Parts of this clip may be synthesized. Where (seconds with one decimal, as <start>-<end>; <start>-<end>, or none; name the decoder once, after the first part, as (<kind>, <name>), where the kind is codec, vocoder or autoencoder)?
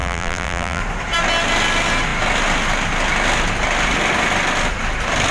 0.0-0.8 (vocoder, BigVGAN v2)